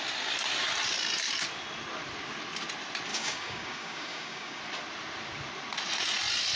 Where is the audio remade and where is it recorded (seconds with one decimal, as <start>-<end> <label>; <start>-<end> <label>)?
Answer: 0.0-3.1 recorded; 3.1-4.6 remade; 4.6-6.6 recorded